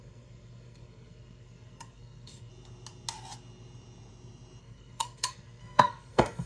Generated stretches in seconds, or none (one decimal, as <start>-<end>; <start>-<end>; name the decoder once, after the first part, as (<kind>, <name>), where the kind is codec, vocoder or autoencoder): 0.0-2.5 (codec, SNAC); 4.6-6.5